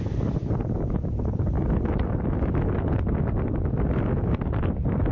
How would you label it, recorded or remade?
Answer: remade